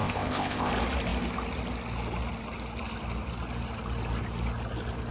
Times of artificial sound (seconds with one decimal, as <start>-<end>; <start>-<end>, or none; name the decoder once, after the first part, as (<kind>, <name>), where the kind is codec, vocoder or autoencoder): 0.0-0.7 (codec, ZipCodec)